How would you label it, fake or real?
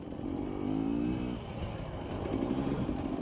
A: real